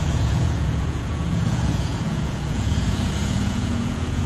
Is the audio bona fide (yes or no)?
no